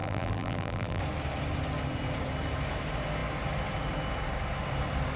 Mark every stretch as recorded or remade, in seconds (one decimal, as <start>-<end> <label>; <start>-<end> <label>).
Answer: 0.0-1.0 remade; 1.0-5.2 recorded